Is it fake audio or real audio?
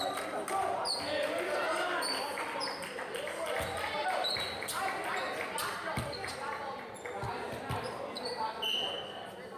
real